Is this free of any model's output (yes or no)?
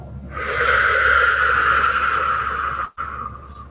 yes